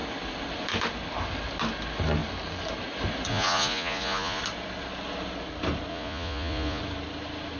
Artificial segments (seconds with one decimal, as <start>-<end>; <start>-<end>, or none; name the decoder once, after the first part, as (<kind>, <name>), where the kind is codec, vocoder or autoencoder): 3.3-4.4 (vocoder, Vocos); 5.9-6.8